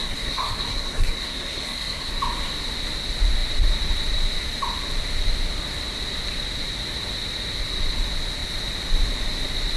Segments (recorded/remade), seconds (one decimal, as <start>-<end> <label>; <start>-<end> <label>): 0.0-2.2 remade; 2.2-9.8 recorded